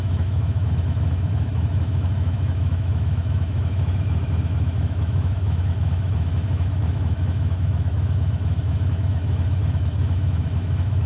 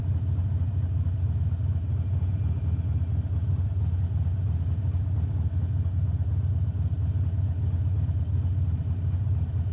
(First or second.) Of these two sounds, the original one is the second